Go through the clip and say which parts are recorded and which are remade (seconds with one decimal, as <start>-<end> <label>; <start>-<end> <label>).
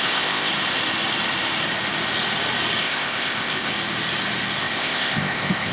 0.0-0.5 remade; 0.5-2.8 recorded; 2.8-3.7 remade; 3.7-4.6 recorded; 4.6-5.7 remade